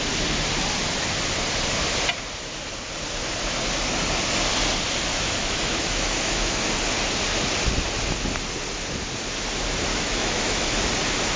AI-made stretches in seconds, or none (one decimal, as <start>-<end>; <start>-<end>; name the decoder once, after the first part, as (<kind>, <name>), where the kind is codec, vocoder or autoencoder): 5.1-6.7 (autoencoder, DAC-VAE); 9.9-10.7